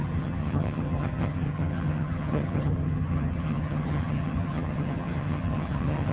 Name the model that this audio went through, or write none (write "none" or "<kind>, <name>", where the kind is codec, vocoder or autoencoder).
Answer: vocoder, HiFi-GAN